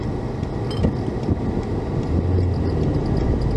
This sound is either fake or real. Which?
real